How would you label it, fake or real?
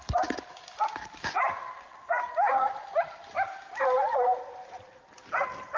real